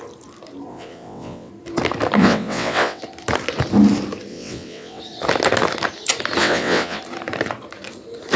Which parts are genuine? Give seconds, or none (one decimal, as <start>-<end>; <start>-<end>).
0.0-0.7; 1.5-2.2; 3.0-4.3; 5.0-6.4; 7.0-8.4